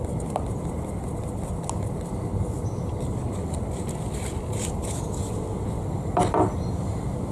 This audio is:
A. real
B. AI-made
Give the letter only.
A